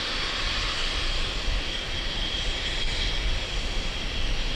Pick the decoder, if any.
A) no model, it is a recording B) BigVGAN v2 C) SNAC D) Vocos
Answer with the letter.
B